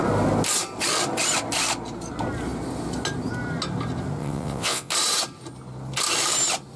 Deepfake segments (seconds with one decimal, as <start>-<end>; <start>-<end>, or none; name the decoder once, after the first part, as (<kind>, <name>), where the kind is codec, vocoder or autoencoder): 4.2-4.9 (vocoder, WaveNeXt)